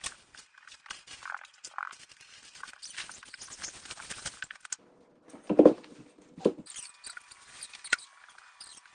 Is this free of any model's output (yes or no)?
yes